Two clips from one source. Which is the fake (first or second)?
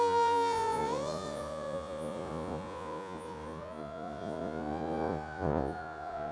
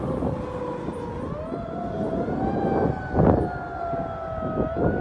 first